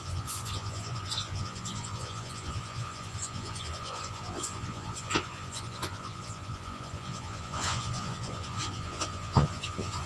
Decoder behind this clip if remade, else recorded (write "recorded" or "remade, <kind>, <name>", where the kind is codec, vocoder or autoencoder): remade, vocoder, Vocos